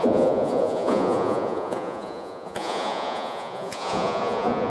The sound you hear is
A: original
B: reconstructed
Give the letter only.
B